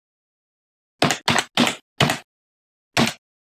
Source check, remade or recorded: recorded